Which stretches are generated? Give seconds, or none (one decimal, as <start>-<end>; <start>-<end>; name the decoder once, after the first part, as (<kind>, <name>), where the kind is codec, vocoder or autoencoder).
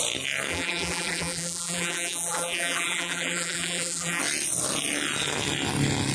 0.5-4.2 (vocoder, BigVGAN v2)